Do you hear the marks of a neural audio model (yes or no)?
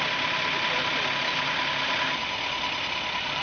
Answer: no